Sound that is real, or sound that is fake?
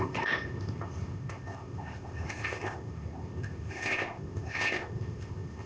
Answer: fake